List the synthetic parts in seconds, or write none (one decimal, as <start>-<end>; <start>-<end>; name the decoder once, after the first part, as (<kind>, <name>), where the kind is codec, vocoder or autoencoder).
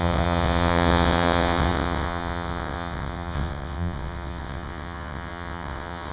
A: 0.0-6.1 (vocoder, WaveNeXt)